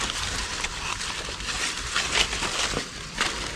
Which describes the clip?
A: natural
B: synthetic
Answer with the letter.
A